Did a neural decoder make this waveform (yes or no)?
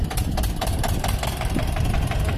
yes